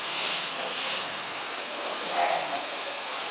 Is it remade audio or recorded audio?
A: remade